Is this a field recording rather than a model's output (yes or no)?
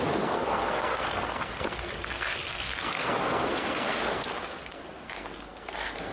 no